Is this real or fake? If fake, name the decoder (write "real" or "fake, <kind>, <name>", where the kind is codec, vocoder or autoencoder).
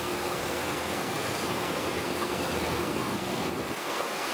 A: fake, codec, SNAC